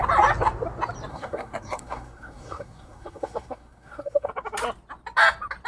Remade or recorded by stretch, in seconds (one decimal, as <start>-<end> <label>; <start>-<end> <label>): 0.0-1.1 recorded; 1.1-4.3 remade; 4.3-5.7 recorded